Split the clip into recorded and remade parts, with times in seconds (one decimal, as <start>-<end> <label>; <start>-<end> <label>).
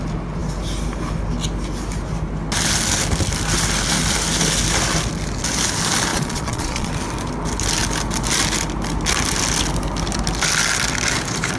0.0-6.1 recorded; 6.1-6.9 remade; 6.9-11.6 recorded